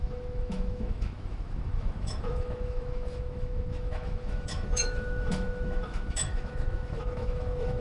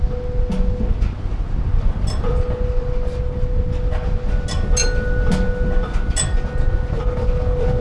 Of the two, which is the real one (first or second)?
second